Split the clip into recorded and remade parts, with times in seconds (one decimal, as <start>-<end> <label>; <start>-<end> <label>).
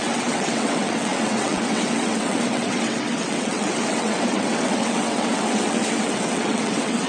0.0-7.1 remade